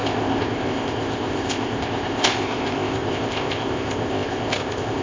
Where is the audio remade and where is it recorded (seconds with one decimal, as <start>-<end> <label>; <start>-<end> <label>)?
0.0-5.0 remade